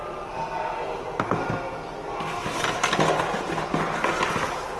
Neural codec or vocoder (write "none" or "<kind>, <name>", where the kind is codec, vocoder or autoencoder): none